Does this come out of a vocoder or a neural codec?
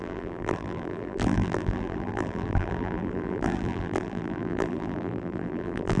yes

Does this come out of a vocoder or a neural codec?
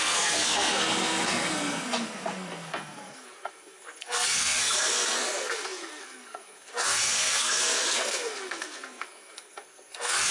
yes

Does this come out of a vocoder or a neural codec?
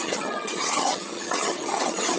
yes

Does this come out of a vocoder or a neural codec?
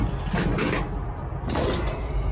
no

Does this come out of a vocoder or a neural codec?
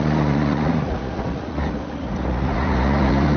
yes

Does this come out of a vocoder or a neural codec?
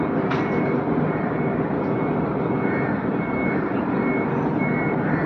no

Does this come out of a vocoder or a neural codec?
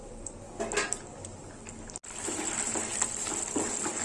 no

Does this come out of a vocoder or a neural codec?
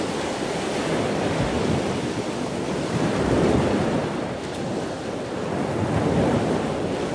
no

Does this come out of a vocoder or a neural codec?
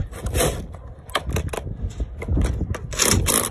no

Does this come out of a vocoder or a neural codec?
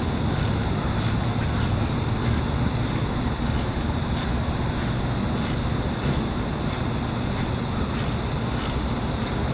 no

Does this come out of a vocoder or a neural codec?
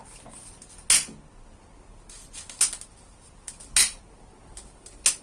no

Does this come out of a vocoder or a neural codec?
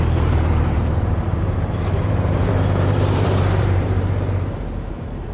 yes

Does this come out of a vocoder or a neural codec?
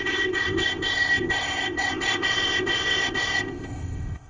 yes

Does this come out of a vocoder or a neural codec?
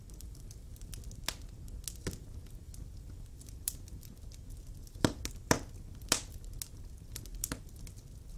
no